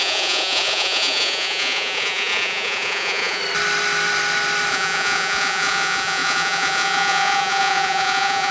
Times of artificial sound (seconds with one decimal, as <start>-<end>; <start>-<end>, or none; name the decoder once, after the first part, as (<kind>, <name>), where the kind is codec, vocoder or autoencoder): 0.0-3.4 (vocoder, Vocos); 4.7-8.5

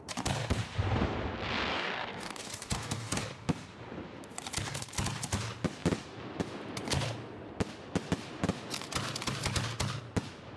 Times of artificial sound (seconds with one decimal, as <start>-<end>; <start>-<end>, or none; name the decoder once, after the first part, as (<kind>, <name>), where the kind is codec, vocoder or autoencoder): 1.7-3.2 (codec, DAC)

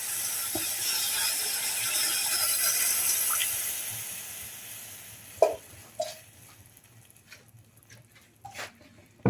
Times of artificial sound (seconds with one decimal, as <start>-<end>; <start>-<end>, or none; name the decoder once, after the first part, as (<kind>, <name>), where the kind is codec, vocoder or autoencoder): none

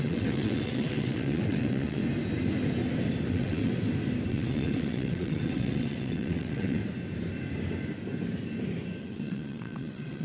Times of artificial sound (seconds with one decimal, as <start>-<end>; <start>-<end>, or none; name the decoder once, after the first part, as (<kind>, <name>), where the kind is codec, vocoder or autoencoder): 0.0-2.0 (vocoder, WaveNeXt); 3.3-3.7; 4.3-6.8; 9.0-10.2

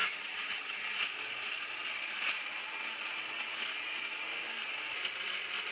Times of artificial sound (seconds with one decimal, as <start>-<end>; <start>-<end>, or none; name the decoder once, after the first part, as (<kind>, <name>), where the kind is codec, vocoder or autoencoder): 0.0-0.8 (vocoder, HiFi-GAN)

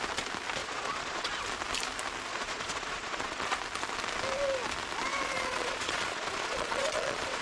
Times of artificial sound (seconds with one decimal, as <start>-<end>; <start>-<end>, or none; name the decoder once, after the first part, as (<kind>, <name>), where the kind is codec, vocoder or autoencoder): 0.6-1.4 (vocoder, Vocos); 2.3-3.5; 5.1-7.4

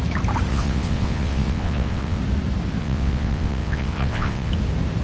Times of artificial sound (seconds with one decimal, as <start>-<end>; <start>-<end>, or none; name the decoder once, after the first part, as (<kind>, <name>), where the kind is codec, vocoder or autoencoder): 0.5-2.2 (vocoder, WaveNeXt); 2.8-4.5

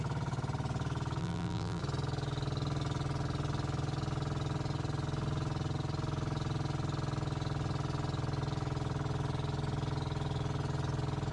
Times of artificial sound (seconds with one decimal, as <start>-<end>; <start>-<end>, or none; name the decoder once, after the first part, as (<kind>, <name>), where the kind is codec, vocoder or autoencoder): 1.2-1.8 (vocoder, BigVGAN v2)